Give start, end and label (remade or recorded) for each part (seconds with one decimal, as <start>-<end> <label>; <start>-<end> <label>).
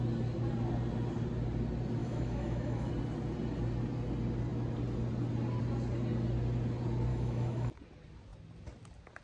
0.0-2.0 recorded; 2.0-2.9 remade; 2.9-7.1 recorded; 7.1-7.7 remade; 7.7-9.2 recorded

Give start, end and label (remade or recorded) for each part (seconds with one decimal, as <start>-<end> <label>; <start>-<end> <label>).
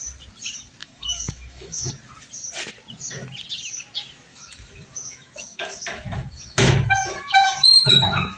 0.0-0.8 recorded; 0.8-1.9 remade; 1.9-4.3 recorded; 4.3-8.4 remade